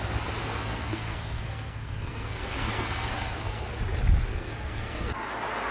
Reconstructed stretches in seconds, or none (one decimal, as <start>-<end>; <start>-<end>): 0.4-3.8; 4.3-5.3